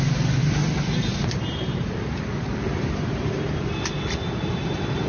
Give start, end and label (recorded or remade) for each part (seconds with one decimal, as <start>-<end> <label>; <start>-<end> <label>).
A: 0.0-0.4 recorded; 0.4-3.5 remade; 3.5-4.2 recorded; 4.2-5.1 remade